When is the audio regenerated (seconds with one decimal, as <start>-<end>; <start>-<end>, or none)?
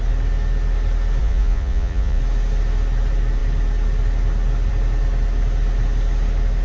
1.2-2.2